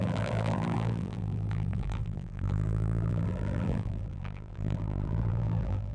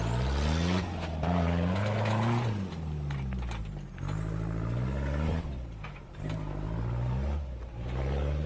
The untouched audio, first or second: second